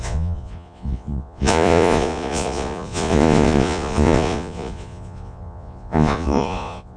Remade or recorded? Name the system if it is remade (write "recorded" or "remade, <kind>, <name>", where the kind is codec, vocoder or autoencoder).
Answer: remade, vocoder, Vocos